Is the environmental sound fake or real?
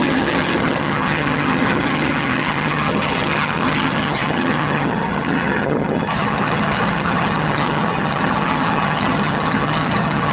fake